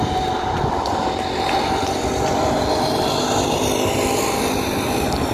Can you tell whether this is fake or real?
real